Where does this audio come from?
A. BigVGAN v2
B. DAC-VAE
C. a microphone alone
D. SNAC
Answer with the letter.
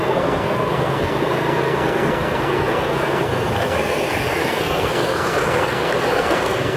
D